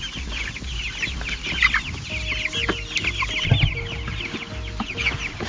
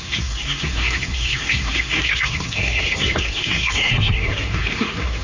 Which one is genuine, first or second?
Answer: first